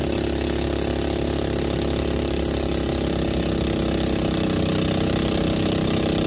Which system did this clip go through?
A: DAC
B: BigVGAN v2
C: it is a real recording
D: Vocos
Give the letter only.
C